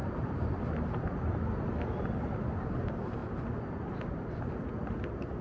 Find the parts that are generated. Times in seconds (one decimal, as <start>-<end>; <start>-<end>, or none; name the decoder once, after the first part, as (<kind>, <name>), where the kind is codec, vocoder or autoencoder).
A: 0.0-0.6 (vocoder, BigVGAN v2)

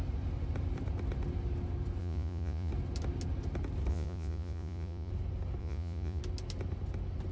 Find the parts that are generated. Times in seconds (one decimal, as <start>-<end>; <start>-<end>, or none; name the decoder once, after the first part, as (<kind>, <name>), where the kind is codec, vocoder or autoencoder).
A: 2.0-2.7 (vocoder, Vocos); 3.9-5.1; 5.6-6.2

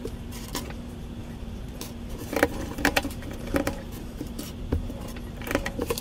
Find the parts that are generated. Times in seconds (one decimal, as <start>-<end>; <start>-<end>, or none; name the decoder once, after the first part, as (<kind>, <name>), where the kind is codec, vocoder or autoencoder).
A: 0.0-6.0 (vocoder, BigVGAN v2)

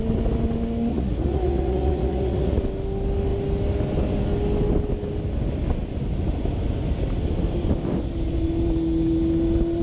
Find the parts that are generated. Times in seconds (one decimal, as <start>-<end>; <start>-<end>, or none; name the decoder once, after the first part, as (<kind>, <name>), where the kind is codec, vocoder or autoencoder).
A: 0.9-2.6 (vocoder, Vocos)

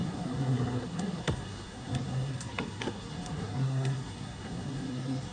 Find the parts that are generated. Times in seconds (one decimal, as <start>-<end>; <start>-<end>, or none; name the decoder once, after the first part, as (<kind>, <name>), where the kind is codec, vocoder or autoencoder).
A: 0.0-5.3 (codec, SNAC)

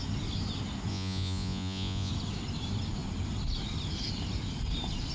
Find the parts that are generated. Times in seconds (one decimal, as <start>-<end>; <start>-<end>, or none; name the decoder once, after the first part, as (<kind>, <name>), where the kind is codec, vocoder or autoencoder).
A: 0.9-2.1 (vocoder, Vocos)

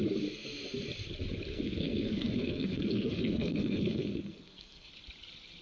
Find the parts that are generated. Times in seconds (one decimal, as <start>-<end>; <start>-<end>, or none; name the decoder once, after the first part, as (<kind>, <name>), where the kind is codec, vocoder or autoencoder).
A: 1.5-4.9 (codec, SNAC)